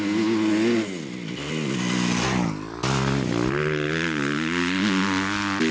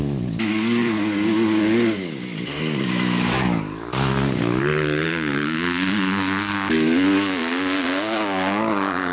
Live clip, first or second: first